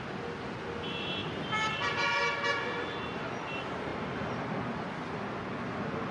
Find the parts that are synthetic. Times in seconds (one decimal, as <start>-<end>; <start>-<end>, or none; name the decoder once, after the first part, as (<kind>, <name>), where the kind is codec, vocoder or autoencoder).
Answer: 1.2-1.7 (vocoder, BigVGAN v2)